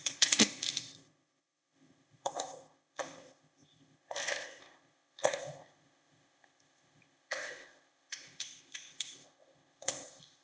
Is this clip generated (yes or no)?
yes